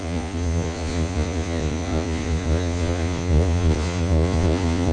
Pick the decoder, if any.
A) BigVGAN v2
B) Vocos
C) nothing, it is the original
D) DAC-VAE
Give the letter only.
B